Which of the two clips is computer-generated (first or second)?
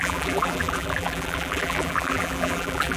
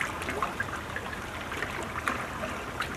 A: first